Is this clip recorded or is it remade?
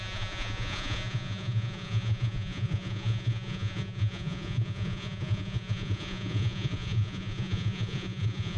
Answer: remade